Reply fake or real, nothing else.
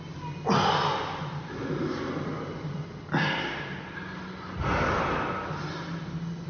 real